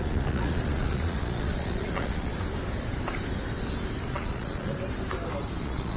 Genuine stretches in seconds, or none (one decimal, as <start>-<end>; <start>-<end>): 2.3-4.1; 4.7-5.6